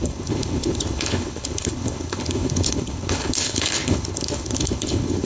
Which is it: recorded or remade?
remade